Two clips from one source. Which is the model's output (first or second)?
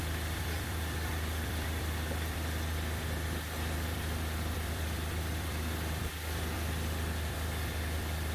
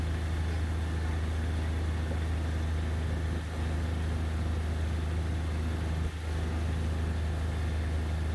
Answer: first